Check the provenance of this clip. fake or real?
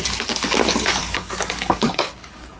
fake